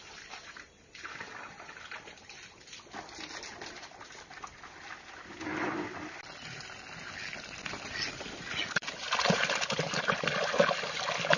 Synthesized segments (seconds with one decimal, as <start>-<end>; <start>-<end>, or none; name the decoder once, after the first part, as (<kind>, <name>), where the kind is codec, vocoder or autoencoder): none